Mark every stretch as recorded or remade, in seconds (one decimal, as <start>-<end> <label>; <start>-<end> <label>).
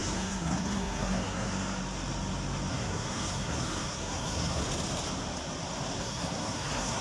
0.0-1.5 remade; 1.5-2.7 recorded; 2.7-4.6 remade; 4.6-6.0 recorded; 6.0-7.0 remade